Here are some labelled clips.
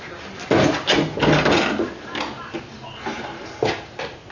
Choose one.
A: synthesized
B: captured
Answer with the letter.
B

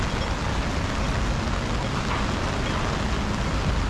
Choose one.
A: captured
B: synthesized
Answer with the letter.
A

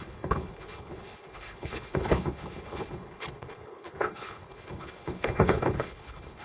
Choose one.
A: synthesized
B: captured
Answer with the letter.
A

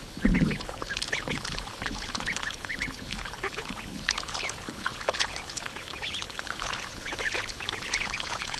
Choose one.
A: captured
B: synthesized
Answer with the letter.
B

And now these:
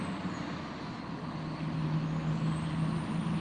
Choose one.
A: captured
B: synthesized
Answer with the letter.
A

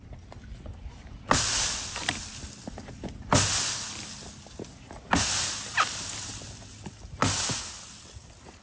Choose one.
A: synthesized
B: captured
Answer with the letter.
B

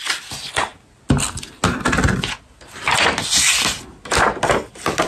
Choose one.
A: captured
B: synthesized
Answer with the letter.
A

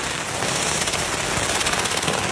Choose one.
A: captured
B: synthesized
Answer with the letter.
A